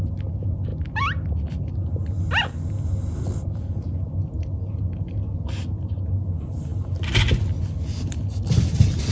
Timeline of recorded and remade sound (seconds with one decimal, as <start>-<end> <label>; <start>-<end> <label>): 0.0-9.1 recorded